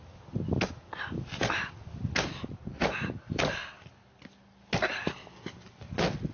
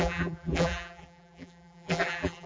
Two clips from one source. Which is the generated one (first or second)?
second